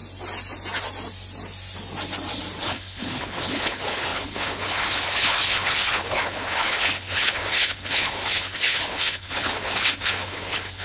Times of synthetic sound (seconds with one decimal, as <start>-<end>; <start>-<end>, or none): 2.6-10.8